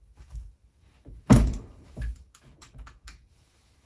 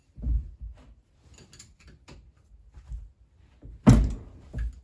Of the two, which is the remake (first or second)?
first